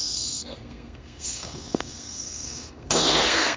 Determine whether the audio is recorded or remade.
remade